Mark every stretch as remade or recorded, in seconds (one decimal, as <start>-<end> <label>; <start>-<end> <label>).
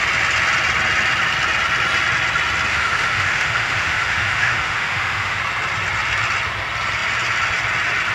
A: 0.0-2.7 recorded; 2.7-5.4 remade; 5.4-8.1 recorded